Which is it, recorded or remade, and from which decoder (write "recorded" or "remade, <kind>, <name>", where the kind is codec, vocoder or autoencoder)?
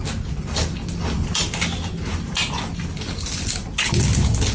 recorded